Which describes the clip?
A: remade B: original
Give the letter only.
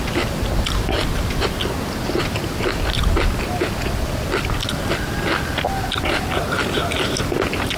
B